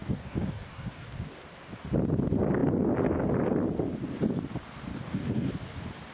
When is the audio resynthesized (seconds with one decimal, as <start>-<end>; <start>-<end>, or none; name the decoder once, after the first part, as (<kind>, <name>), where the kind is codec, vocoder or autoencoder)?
0.0-1.4 (codec, DAC); 4.9-5.5